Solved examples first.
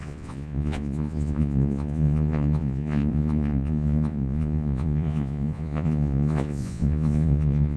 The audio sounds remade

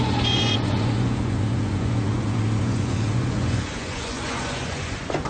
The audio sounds remade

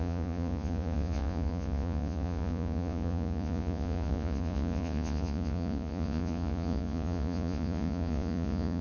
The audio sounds remade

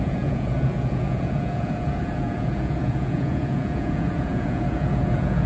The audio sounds remade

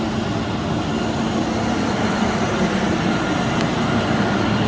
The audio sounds recorded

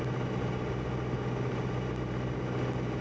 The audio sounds recorded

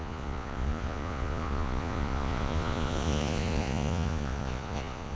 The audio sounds remade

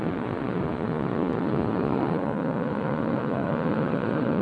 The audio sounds remade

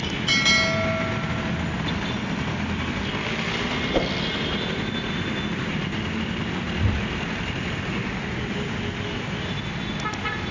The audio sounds recorded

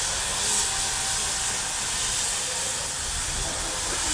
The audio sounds recorded